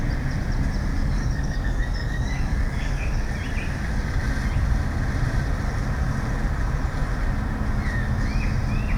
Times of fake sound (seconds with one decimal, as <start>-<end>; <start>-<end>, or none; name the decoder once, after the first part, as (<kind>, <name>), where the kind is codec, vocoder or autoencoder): 0.9-3.3 (codec, DAC)